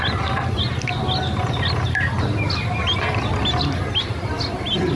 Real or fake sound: real